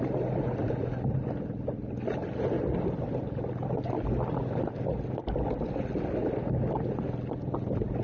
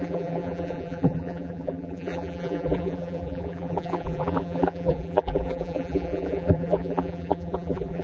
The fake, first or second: second